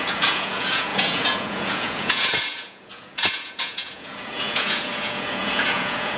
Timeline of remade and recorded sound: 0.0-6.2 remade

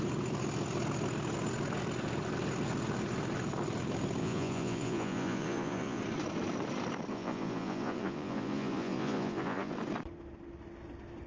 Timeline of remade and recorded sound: 0.0-4.2 recorded; 4.2-6.0 remade; 6.0-7.1 recorded; 7.1-9.7 remade; 9.7-11.3 recorded

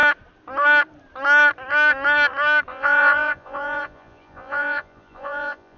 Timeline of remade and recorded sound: 0.0-2.7 recorded; 2.7-5.8 remade